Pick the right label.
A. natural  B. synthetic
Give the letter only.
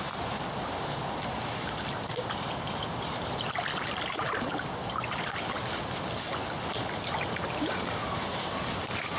A